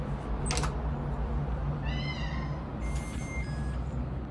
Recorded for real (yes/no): yes